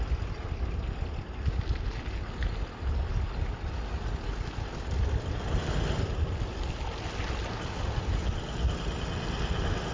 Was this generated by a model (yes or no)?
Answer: no